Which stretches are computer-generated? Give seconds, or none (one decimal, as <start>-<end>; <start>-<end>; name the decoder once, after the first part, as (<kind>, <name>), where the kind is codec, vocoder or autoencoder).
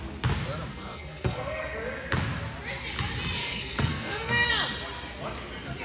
0.7-1.6 (codec, SNAC); 3.4-4.5